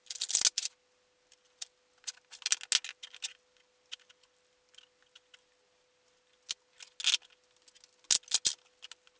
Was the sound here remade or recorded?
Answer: recorded